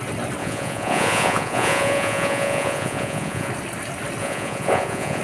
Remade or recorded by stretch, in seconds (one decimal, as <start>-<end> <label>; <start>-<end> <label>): 0.0-0.4 recorded; 0.4-3.5 remade; 3.5-4.2 recorded; 4.2-5.2 remade